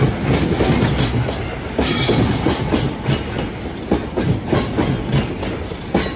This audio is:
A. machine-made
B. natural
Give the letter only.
B